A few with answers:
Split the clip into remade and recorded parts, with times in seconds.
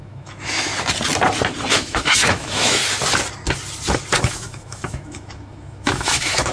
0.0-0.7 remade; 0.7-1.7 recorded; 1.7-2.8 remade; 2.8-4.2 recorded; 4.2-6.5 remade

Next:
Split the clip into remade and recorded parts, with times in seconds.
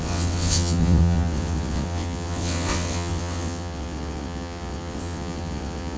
0.0-6.0 remade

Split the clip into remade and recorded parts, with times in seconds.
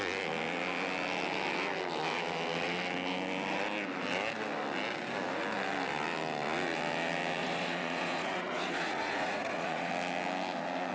0.0-7.4 recorded; 7.4-9.9 remade; 9.9-10.9 recorded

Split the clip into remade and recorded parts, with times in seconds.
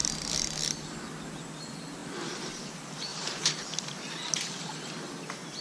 0.0-3.1 recorded; 3.1-4.1 remade; 4.1-5.6 recorded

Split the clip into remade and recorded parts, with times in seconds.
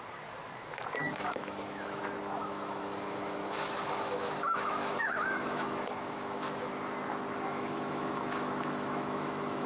0.0-1.0 recorded; 1.0-2.0 remade; 2.0-2.4 recorded; 2.4-6.7 remade; 6.7-7.5 recorded; 7.5-9.7 remade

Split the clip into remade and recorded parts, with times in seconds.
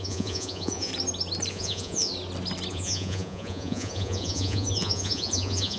0.0-0.9 remade; 0.9-1.5 recorded; 1.5-2.1 remade; 2.1-2.7 recorded; 2.7-5.8 remade